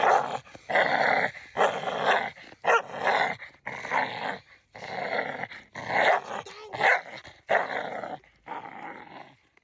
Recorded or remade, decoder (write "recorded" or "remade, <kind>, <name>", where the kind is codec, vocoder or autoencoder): recorded